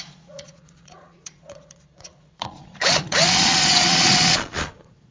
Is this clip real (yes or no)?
no